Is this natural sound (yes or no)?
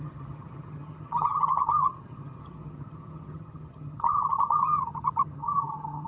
no